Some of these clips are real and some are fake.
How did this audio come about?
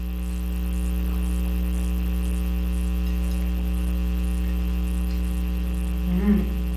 real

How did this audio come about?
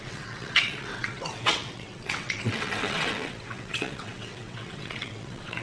fake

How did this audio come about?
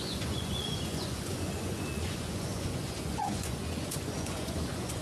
fake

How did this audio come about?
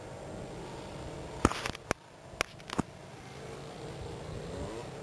real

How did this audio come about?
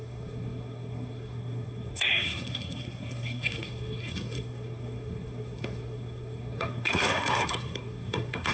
fake